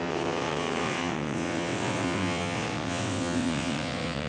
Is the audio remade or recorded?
remade